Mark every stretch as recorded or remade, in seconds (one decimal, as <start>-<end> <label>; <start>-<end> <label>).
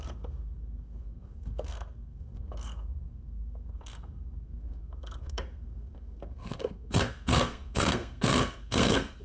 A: 0.0-9.2 remade